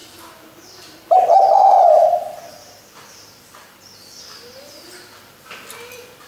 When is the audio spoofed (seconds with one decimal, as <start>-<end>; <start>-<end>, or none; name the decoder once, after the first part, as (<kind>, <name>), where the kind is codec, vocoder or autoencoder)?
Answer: 0.0-3.8 (vocoder, BigVGAN v2)